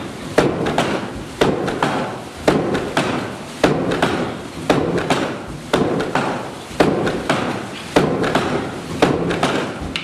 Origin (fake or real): real